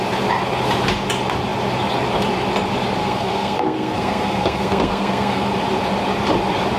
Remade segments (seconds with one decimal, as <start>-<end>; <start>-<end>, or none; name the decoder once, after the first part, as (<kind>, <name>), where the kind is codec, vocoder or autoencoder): 3.0-5.5 (codec, SNAC)